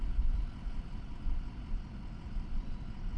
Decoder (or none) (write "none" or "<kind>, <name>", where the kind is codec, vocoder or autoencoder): none